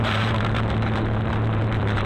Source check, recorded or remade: remade